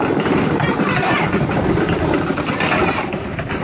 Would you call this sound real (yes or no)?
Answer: no